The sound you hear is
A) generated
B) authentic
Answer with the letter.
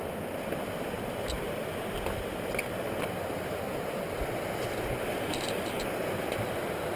B